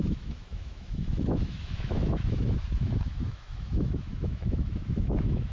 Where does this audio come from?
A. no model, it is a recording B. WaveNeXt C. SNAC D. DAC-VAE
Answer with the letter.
D